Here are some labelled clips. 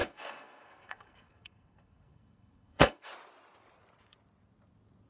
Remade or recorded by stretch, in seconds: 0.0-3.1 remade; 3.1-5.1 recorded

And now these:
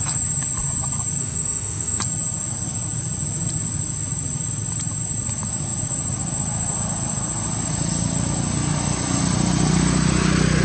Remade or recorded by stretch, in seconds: 0.0-1.2 recorded; 1.2-2.0 remade; 2.0-10.6 recorded

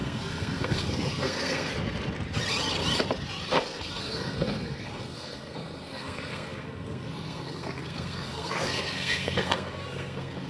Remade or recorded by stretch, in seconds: 0.0-1.7 remade; 1.7-3.6 recorded; 3.6-10.5 remade

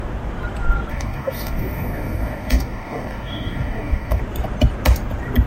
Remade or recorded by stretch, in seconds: 0.0-0.9 recorded; 0.9-4.2 remade; 4.2-5.5 recorded

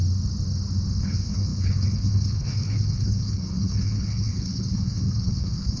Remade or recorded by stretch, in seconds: 0.0-1.0 recorded; 1.0-5.8 remade

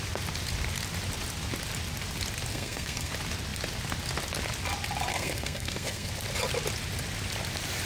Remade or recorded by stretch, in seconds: 0.0-2.5 recorded; 2.5-3.1 remade; 3.1-5.1 recorded; 5.1-6.1 remade; 6.1-7.9 recorded